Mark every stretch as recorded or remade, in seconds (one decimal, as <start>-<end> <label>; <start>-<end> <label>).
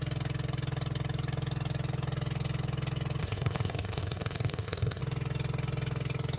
0.0-3.2 recorded; 3.2-5.0 remade; 5.0-6.4 recorded